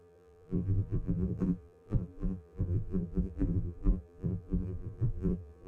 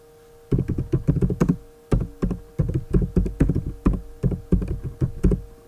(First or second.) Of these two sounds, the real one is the second